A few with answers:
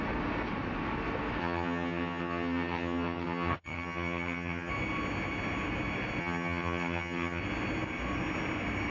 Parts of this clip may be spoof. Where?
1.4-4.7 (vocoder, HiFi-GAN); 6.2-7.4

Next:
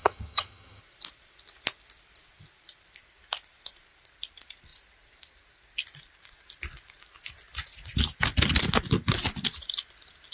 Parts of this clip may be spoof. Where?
0.0-0.8 (vocoder, HiFi-GAN)

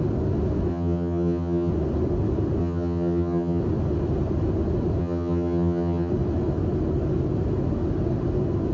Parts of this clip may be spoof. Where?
0.7-1.7 (vocoder, HiFi-GAN); 2.6-3.6; 5.0-6.1

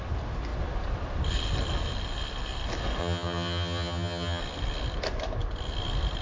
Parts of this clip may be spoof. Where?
3.0-4.4 (vocoder, HiFi-GAN)

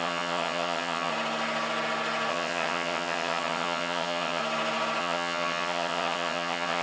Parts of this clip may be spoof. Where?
0.0-1.1 (vocoder, HiFi-GAN); 2.3-4.4; 5.0-6.8

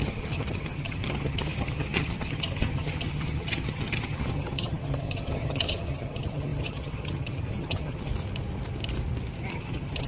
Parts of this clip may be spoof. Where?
0.0-8.1 (vocoder, HiFi-GAN); 9.5-10.1

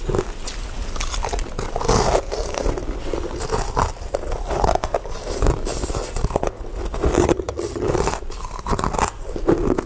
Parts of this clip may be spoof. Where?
7.2-7.9 (vocoder, HiFi-GAN)